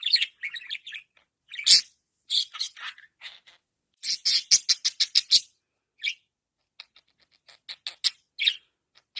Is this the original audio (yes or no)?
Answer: yes